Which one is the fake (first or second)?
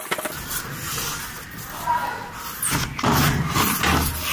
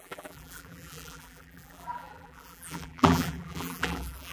second